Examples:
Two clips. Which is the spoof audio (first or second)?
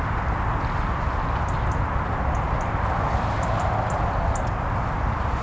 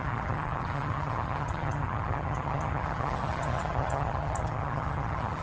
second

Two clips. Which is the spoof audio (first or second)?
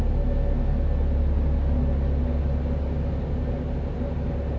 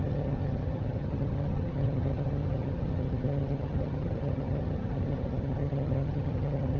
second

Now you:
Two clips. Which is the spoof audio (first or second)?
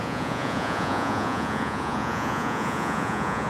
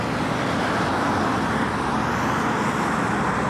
first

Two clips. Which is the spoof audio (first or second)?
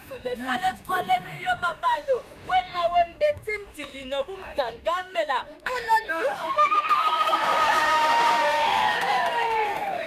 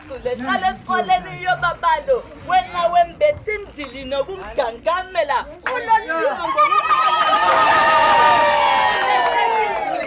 first